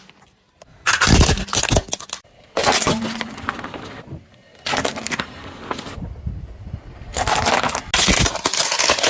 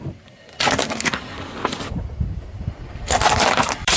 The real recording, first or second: first